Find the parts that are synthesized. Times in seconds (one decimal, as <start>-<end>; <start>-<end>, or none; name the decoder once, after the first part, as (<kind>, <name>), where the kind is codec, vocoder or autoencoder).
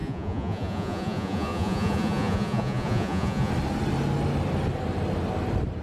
0.0-3.5 (vocoder, Vocos)